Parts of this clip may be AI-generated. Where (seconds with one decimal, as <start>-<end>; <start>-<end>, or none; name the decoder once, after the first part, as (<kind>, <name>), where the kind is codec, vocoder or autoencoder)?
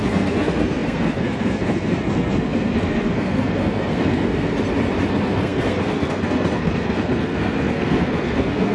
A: 0.0-4.5 (codec, SNAC); 5.1-8.7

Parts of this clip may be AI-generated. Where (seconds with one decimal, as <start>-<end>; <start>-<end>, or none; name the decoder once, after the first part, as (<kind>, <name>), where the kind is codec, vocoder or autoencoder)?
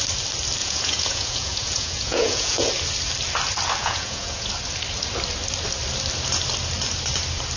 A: 0.6-2.7 (vocoder, Vocos); 3.8-4.5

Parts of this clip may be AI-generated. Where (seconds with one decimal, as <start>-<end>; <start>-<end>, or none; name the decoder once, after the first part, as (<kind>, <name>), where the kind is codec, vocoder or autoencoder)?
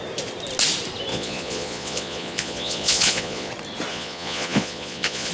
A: 1.1-3.5 (vocoder, Vocos); 3.9-5.3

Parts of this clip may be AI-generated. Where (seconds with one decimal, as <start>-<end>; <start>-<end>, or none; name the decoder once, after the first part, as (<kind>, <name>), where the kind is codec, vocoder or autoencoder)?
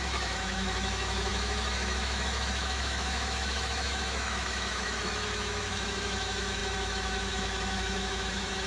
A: 0.0-8.7 (autoencoder, DAC-VAE)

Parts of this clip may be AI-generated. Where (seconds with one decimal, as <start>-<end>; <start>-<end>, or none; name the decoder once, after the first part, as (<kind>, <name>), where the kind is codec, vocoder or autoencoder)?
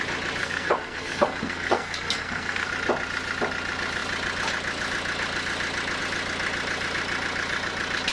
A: 0.4-2.7 (codec, SNAC)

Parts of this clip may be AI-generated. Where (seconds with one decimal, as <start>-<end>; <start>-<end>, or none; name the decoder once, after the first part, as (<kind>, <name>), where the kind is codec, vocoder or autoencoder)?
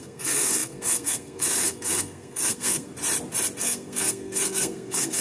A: 0.0-2.9 (codec, SNAC); 3.6-5.2